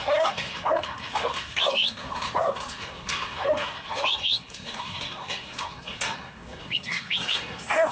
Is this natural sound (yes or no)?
no